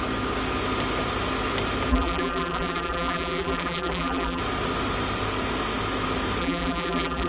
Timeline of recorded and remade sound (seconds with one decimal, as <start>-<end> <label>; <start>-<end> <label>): 0.0-1.9 recorded; 1.9-4.4 remade; 4.4-6.4 recorded; 6.4-7.3 remade